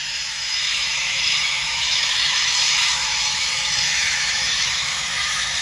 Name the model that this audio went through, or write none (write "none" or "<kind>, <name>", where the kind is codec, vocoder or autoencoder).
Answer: autoencoder, DAC-VAE